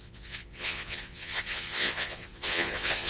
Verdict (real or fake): fake